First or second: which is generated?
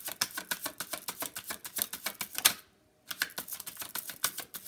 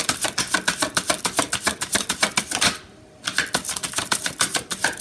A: second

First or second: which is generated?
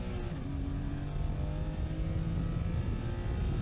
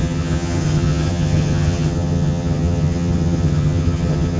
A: second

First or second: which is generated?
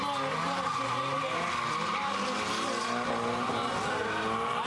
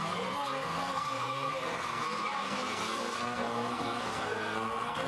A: second